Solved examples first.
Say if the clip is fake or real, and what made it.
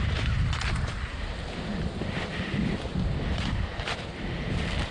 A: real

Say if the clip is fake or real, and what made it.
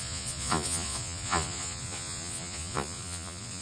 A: fake, vocoder, Vocos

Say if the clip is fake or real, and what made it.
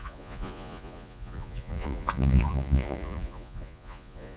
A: fake, vocoder, Vocos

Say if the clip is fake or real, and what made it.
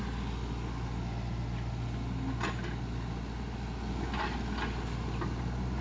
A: real